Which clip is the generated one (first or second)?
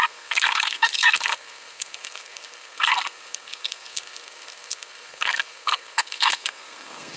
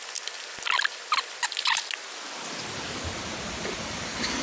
first